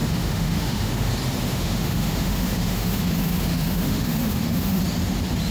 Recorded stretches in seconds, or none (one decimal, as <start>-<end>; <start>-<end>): 1.1-1.5; 4.8-5.5